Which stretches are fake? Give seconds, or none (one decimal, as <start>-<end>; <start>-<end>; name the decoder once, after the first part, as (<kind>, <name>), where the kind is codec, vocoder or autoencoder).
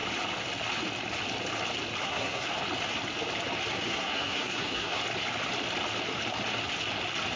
2.0-2.5 (codec, SNAC); 3.7-5.0